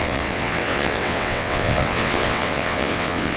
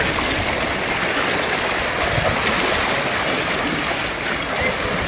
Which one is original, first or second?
second